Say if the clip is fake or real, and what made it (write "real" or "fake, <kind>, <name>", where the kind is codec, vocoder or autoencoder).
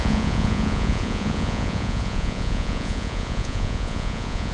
fake, vocoder, Vocos